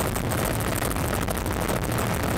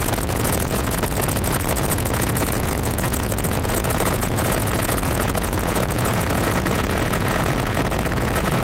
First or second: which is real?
first